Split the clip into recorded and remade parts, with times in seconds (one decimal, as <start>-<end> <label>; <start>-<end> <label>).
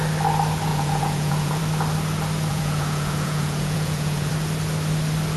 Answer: 0.0-0.7 recorded; 0.7-1.6 remade; 1.6-2.5 recorded; 2.5-4.3 remade; 4.3-5.4 recorded